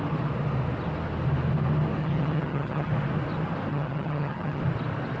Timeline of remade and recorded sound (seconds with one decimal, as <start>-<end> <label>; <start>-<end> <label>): 0.0-2.0 recorded; 2.0-2.9 remade; 2.9-3.7 recorded; 3.7-4.6 remade; 4.6-5.2 recorded